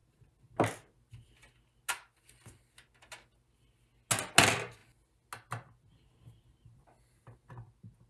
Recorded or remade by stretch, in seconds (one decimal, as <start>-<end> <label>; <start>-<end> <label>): 0.0-8.1 recorded